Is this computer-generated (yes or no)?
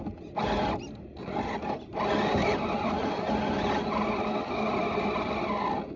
no